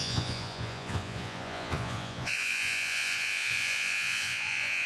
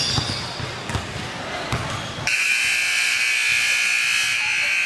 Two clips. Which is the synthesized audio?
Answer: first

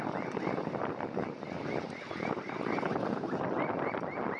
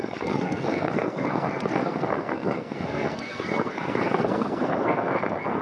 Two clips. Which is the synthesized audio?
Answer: second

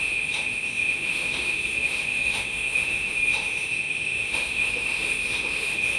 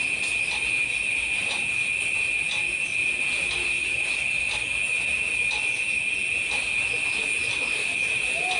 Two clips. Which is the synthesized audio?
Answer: first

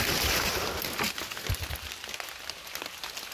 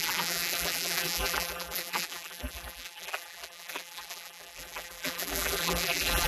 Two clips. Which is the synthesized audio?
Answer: second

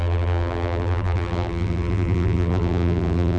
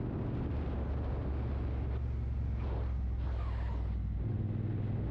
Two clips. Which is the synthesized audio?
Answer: first